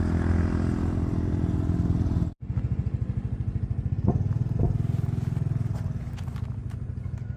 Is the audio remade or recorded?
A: recorded